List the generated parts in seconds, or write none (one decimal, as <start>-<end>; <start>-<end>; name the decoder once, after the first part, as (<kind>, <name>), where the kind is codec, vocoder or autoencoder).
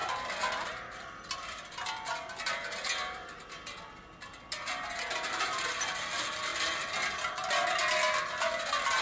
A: 0.0-4.4 (vocoder, BigVGAN v2)